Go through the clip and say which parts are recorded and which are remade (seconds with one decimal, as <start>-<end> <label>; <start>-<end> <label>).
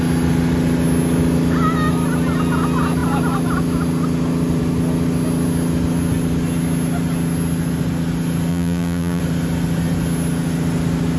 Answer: 0.0-8.5 recorded; 8.5-9.2 remade; 9.2-11.2 recorded